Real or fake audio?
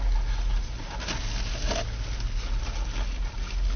real